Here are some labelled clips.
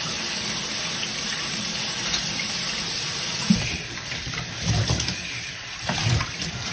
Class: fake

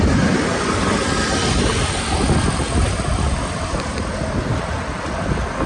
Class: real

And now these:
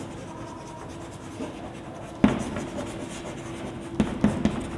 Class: real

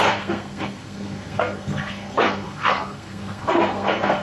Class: fake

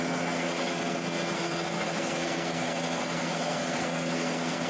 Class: fake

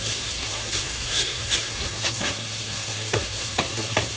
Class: fake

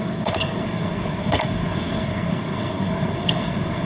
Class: fake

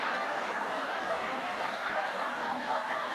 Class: fake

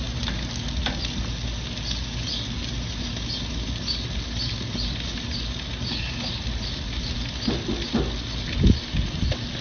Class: real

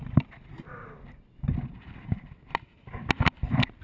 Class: real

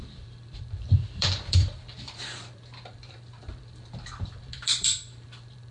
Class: fake